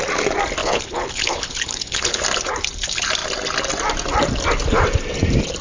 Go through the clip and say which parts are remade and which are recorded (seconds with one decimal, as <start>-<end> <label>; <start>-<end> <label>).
0.0-0.6 recorded; 0.6-2.2 remade; 2.2-5.6 recorded